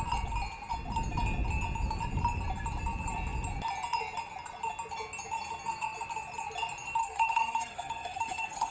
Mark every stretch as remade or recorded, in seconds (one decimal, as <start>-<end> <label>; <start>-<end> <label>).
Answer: 0.0-7.0 recorded; 7.0-8.7 remade